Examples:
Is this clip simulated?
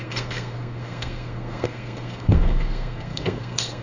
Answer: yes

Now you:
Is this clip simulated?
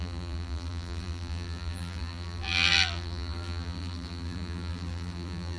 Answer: yes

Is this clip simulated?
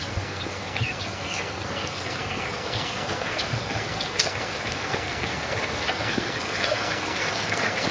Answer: yes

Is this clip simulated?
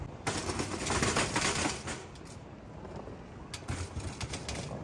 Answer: no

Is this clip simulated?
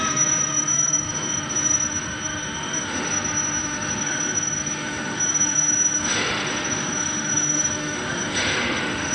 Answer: yes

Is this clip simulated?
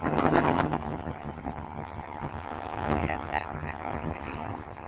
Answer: yes